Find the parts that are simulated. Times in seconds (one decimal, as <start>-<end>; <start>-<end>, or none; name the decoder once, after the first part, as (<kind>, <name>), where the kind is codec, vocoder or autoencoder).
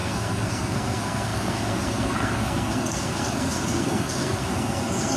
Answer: 0.0-5.2 (codec, SNAC)